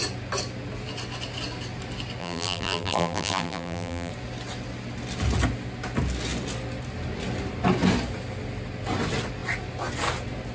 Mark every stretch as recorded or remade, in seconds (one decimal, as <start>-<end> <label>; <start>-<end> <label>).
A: 0.0-2.2 recorded; 2.2-4.1 remade; 4.1-10.5 recorded